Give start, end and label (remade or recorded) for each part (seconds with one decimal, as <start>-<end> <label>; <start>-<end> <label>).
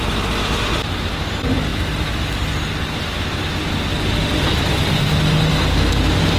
0.0-6.4 recorded